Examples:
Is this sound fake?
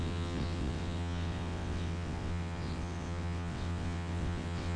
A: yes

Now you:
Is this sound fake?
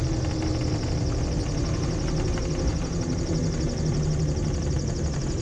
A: no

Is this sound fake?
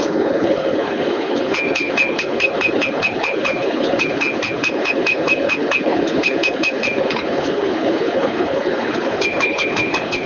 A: yes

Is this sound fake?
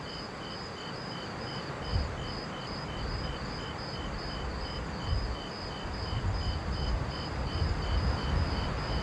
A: no